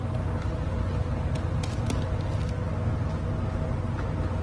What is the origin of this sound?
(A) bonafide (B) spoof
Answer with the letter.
A